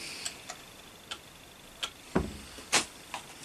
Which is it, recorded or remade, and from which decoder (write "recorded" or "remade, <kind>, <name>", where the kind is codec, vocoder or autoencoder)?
recorded